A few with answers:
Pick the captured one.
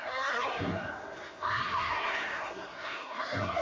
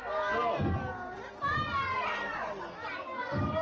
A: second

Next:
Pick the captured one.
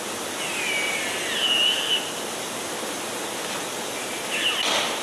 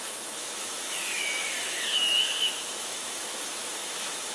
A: first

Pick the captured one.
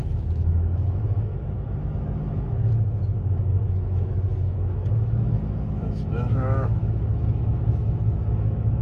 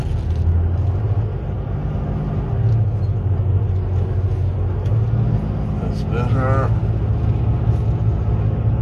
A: second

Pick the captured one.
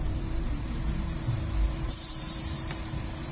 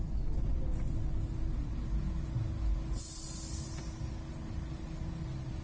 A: second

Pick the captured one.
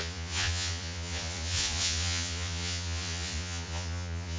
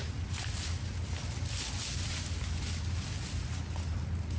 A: second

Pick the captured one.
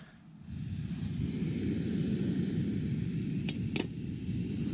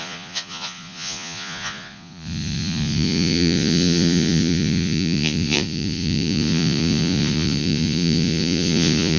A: first